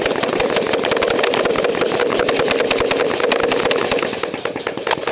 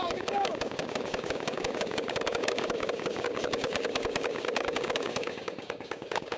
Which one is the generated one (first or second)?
second